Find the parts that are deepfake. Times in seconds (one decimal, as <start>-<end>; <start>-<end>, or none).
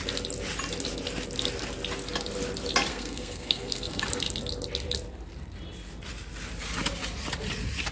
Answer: 2.9-4.0